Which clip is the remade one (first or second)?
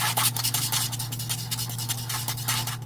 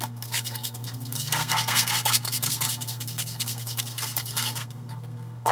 second